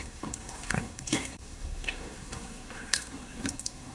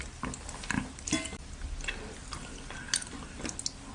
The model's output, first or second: first